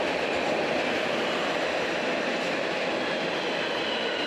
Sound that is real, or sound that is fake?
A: real